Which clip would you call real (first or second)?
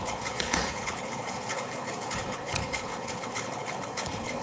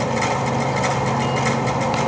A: second